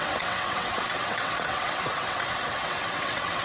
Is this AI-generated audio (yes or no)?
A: yes